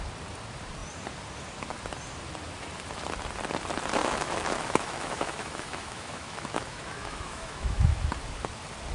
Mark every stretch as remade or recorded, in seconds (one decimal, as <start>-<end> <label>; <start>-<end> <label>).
0.0-4.0 recorded; 4.0-8.0 remade; 8.0-8.9 recorded